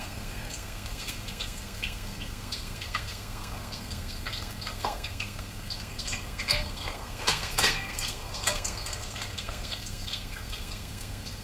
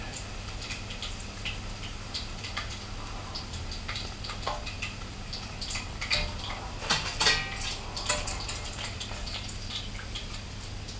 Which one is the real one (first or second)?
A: second